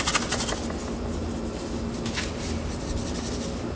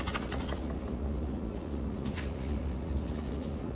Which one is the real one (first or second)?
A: first